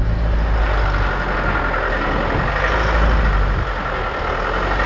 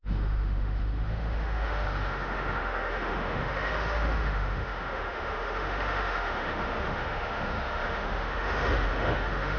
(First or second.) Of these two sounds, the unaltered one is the first